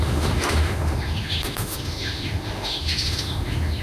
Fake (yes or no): yes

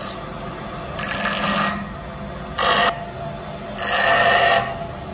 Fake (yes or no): no